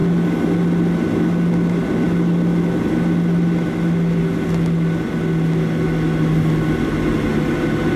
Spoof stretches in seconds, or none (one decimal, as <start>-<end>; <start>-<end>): none